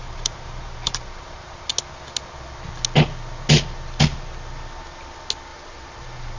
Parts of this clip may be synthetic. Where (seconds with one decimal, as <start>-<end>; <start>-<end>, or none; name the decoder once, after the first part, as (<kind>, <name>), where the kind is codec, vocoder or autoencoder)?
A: 0.0-1.7 (vocoder, BigVGAN v2); 5.5-6.4